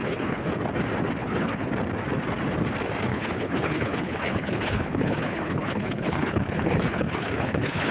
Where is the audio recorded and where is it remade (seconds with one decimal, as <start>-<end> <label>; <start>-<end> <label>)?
0.0-0.5 remade; 0.5-1.2 recorded; 1.2-1.7 remade; 1.7-3.1 recorded; 3.1-7.9 remade

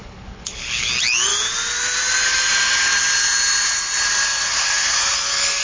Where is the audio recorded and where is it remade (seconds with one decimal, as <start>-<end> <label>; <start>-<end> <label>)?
0.0-0.9 remade; 0.9-5.6 recorded

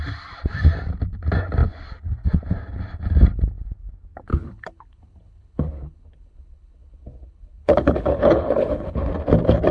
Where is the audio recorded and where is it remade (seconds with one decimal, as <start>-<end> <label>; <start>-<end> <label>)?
0.0-4.3 recorded; 4.3-9.1 remade; 9.1-9.7 recorded

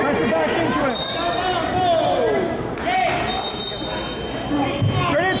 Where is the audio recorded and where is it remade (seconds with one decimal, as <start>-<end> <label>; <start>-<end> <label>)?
0.0-5.4 recorded

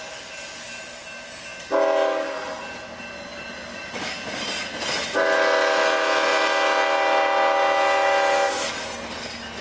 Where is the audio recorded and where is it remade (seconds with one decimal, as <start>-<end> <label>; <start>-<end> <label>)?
0.0-9.6 recorded